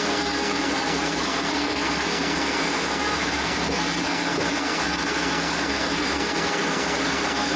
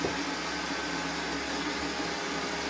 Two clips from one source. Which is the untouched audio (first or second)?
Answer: second